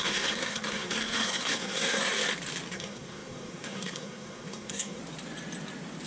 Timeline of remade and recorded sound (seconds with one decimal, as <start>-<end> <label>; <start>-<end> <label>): 0.0-2.1 remade; 2.1-2.7 recorded; 2.7-5.0 remade; 5.0-6.1 recorded